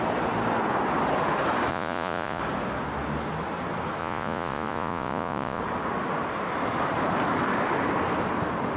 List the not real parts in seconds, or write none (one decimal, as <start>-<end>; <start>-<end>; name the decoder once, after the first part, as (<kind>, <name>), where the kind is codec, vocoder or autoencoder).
1.7-2.4 (vocoder, Vocos); 4.0-5.6